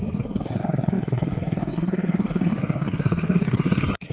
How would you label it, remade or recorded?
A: remade